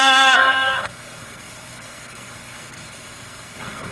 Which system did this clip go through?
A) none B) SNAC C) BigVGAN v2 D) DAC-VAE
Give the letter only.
B